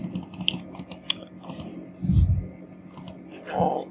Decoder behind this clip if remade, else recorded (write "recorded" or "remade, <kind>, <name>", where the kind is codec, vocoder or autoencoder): recorded